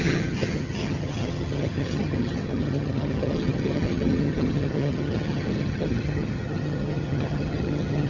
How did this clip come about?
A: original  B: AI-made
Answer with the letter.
B